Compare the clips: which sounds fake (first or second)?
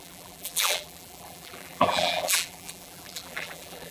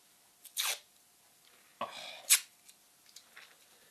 first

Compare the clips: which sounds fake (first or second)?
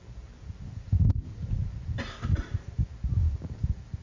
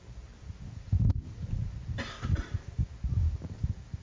second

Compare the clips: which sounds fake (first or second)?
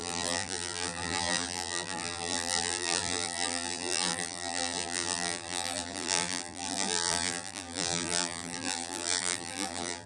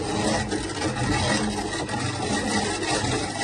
first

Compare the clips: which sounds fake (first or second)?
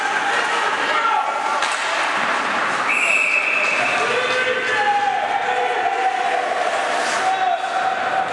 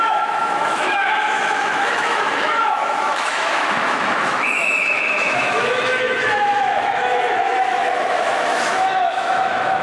second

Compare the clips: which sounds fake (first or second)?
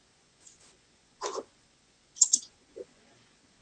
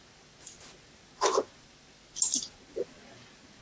first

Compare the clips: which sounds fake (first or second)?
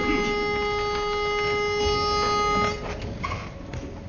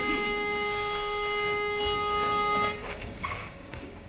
second